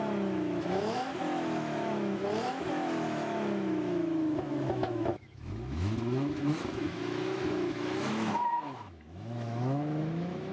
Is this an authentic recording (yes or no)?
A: no